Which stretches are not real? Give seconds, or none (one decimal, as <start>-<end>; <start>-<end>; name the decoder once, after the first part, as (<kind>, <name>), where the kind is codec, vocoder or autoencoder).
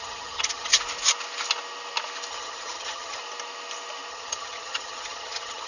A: 0.0-0.7 (vocoder, HiFi-GAN); 2.3-3.2; 4.1-5.7